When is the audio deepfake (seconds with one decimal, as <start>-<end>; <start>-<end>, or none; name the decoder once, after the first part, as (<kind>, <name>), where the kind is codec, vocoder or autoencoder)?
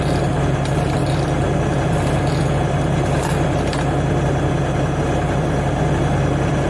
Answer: none